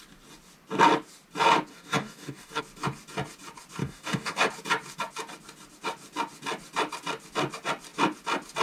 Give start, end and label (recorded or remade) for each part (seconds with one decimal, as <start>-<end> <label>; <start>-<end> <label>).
0.0-1.7 recorded; 1.7-2.6 remade; 2.6-3.8 recorded; 3.8-4.5 remade; 4.5-8.6 recorded